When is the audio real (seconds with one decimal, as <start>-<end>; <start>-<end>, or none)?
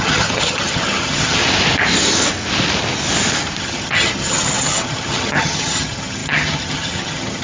1.4-3.6